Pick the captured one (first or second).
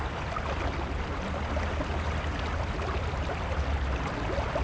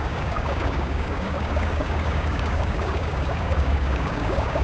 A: first